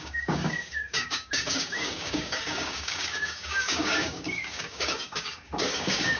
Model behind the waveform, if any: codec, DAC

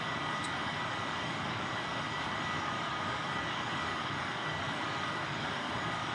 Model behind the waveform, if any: codec, DAC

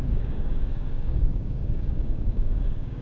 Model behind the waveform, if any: codec, DAC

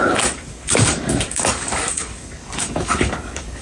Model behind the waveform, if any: codec, DAC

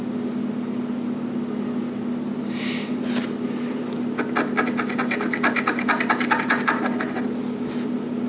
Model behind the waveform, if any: none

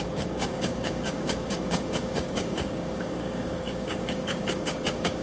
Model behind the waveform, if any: codec, DAC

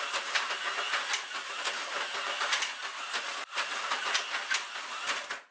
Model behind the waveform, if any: none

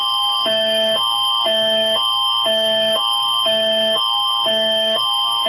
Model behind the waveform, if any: codec, DAC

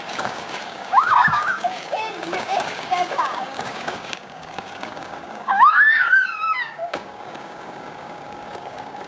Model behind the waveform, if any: codec, DAC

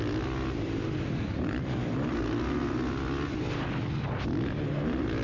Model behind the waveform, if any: none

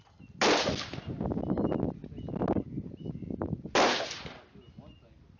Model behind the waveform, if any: none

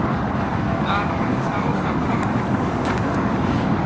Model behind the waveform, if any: codec, DAC